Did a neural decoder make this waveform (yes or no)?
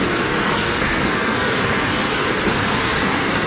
yes